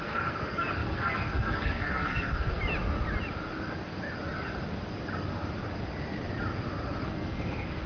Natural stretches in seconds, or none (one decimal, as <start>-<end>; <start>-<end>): 2.6-7.0